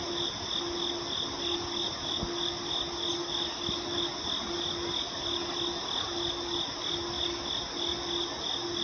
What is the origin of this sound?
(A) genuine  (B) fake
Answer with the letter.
A